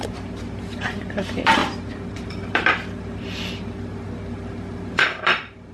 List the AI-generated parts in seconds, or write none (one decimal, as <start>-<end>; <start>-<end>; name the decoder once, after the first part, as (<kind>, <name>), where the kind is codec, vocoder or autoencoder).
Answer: 0.0-5.7 (vocoder, BigVGAN v2)